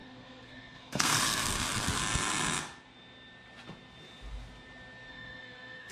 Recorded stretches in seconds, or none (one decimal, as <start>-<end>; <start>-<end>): 2.0-5.1

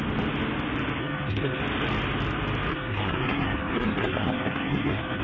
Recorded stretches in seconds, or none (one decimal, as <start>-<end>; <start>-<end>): 0.0-1.0; 1.6-2.7